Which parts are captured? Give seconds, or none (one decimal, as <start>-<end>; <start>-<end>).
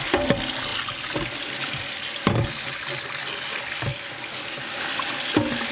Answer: 0.0-5.7